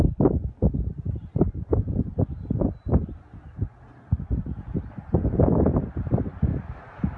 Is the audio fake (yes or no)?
no